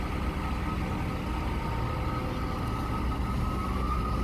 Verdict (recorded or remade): recorded